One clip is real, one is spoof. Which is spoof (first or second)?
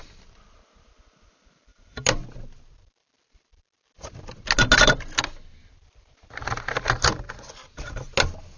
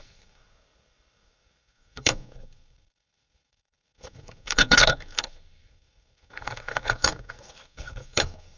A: second